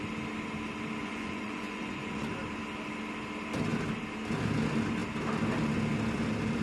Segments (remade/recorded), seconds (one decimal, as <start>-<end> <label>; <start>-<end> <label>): 0.0-1.0 recorded; 1.0-2.3 remade; 2.3-6.6 recorded